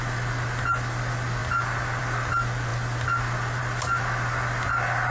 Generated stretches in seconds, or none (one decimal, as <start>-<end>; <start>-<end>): none